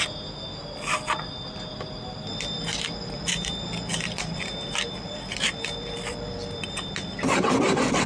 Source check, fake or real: fake